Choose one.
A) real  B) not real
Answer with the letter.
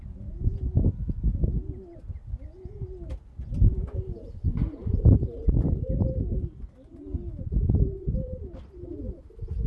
A